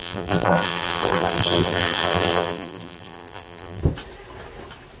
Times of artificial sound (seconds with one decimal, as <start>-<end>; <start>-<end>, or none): 0.0-3.8